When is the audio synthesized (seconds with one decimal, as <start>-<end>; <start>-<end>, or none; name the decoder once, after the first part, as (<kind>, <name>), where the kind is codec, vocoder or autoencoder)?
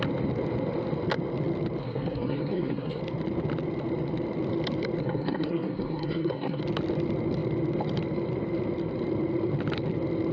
1.8-3.0 (codec, SNAC); 5.0-6.6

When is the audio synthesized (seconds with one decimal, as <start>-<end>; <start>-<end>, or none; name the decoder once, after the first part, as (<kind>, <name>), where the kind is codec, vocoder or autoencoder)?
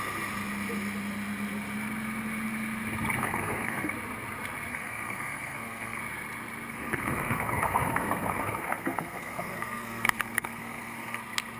3.2-3.9 (codec, SNAC); 4.7-6.0; 6.7-11.2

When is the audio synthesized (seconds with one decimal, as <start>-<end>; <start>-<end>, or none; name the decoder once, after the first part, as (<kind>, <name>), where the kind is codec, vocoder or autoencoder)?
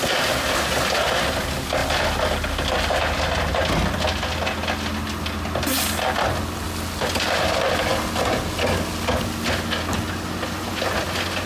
none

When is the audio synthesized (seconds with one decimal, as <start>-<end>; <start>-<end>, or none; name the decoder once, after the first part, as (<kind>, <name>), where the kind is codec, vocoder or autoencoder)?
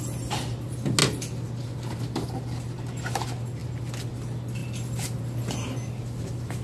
none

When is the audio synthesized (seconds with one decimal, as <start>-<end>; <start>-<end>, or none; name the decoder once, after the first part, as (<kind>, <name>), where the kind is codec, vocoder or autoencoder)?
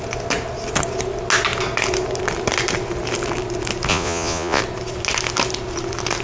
3.9-4.6 (vocoder, Vocos)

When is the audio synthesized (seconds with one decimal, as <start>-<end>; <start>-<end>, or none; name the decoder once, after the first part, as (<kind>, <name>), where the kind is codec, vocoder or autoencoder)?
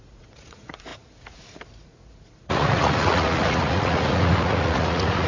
0.0-5.3 (vocoder, Vocos)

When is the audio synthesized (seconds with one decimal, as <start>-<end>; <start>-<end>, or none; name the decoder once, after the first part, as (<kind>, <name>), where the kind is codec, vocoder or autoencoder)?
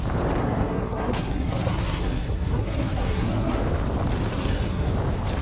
0.4-3.6 (codec, SNAC); 4.3-4.9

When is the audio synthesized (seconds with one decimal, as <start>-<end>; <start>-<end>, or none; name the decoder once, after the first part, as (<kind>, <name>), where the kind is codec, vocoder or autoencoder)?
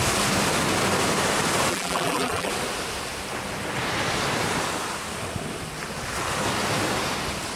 1.7-2.5 (vocoder, BigVGAN v2)